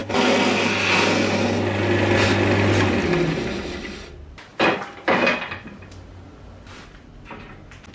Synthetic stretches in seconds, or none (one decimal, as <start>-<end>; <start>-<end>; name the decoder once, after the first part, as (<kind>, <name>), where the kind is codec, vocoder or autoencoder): none